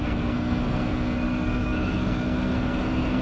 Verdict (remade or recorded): remade